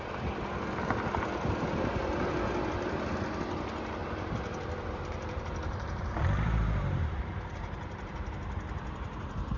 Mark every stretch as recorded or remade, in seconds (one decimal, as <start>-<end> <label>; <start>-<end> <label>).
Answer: 0.0-4.0 recorded; 4.0-8.3 remade; 8.3-9.6 recorded